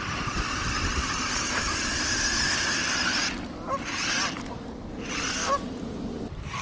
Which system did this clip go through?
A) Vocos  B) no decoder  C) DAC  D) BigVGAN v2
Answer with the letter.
B